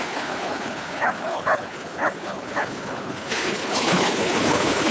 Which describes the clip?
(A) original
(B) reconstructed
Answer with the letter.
B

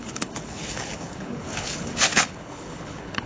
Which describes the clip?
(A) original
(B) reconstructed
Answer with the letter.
B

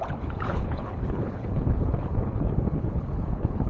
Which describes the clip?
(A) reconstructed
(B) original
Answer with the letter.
A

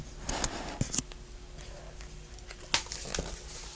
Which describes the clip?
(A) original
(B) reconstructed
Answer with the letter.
A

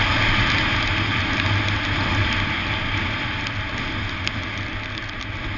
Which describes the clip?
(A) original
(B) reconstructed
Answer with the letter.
A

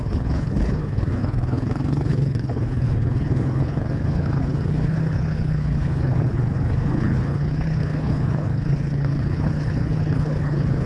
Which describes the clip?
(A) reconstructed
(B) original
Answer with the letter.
A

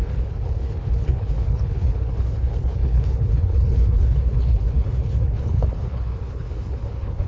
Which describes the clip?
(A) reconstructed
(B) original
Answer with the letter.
A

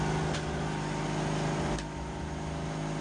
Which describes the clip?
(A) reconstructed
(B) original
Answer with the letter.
B